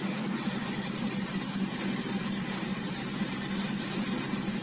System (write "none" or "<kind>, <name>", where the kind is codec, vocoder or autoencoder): none